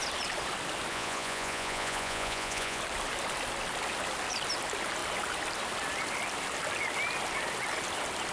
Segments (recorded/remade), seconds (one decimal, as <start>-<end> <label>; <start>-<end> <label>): 0.0-0.9 recorded; 0.9-2.8 remade; 2.8-8.3 recorded